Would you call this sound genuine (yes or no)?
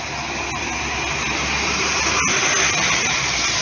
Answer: yes